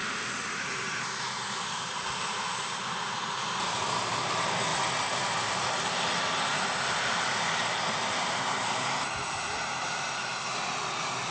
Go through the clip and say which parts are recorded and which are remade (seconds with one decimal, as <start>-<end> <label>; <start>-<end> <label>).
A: 0.0-0.6 remade; 0.6-11.3 recorded